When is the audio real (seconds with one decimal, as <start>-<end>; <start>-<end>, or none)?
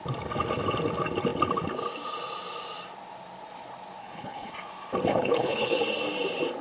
0.0-4.0; 4.5-5.1; 5.8-6.6